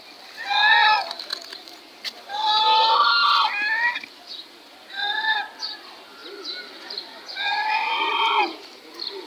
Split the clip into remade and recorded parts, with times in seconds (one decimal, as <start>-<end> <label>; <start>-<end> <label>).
0.0-9.3 recorded